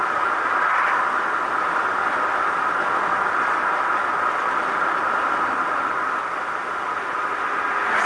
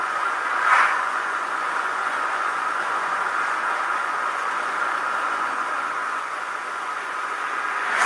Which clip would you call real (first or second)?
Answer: first